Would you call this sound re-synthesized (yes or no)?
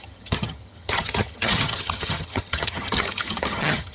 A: yes